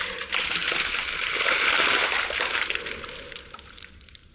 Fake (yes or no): yes